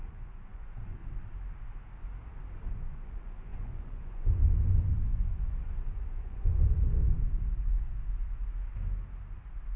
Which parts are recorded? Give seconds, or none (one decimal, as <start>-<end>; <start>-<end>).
1.0-2.7; 7.0-9.8

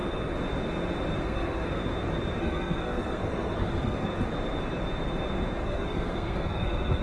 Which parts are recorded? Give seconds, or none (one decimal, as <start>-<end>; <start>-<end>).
0.0-1.2; 1.8-2.4; 4.1-5.6

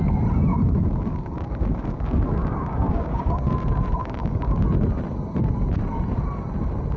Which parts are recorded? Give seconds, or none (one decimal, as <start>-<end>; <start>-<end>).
0.0-0.5; 3.4-4.0; 4.6-7.0

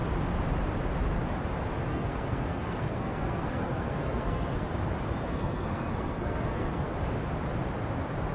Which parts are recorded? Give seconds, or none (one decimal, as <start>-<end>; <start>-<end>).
0.0-1.9; 4.7-5.3; 6.9-8.3

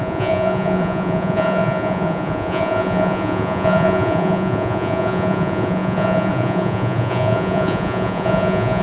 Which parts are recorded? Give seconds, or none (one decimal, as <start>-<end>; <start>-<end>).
none